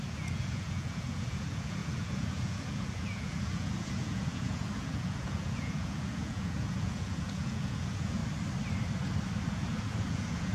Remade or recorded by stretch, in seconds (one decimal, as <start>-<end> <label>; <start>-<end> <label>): 0.0-8.2 remade; 8.2-9.4 recorded; 9.4-10.5 remade